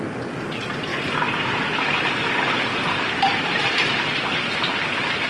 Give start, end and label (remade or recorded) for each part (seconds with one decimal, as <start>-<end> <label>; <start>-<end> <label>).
0.0-0.9 recorded; 0.9-4.1 remade; 4.1-5.3 recorded